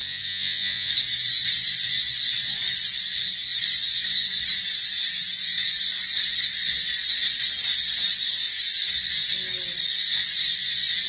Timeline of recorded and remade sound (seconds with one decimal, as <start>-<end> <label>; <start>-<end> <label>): 0.0-0.9 remade; 0.9-11.1 recorded